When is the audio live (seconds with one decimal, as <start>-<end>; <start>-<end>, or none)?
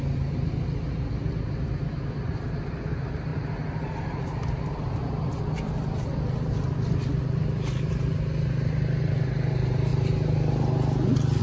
0.0-11.4